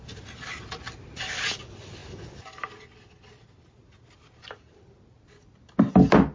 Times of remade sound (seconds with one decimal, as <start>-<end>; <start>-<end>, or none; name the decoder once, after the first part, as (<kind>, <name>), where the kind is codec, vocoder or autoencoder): none